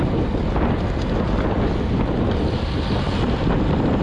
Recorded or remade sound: recorded